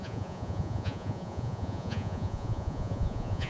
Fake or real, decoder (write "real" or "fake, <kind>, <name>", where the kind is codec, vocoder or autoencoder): fake, vocoder, Vocos